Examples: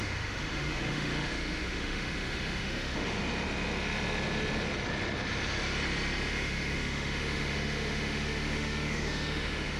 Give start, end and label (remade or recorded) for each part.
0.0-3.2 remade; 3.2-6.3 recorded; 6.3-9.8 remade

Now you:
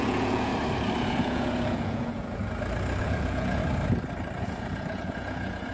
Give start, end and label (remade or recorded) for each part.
0.0-0.5 remade; 0.5-1.0 recorded; 1.0-2.4 remade; 2.4-3.0 recorded; 3.0-3.6 remade; 3.6-4.4 recorded; 4.4-5.7 remade

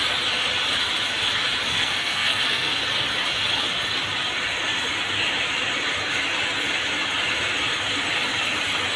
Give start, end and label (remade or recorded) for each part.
0.0-1.7 recorded; 1.7-2.8 remade; 2.8-9.0 recorded

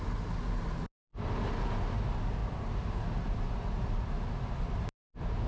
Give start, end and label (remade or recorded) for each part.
0.0-5.5 recorded

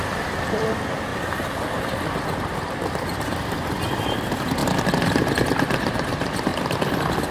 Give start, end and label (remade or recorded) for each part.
0.0-7.3 recorded